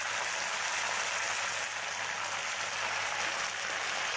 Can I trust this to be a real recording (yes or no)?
yes